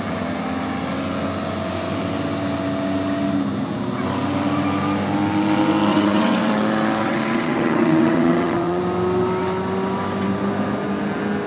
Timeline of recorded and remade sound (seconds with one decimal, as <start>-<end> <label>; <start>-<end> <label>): 0.0-5.9 recorded; 5.9-6.5 remade; 6.5-7.0 recorded; 7.0-8.8 remade; 8.8-11.5 recorded